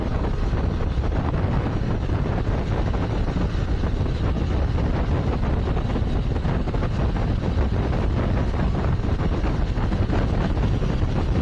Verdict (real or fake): real